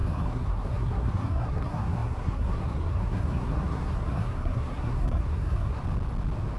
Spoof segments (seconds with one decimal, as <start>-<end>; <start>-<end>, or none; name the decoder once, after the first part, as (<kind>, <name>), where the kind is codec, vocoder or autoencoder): 0.0-5.8 (codec, SNAC)